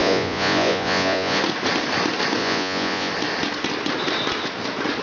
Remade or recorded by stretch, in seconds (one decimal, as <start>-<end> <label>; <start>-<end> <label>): 0.0-1.4 remade; 1.4-2.4 recorded; 2.4-3.1 remade; 3.1-5.0 recorded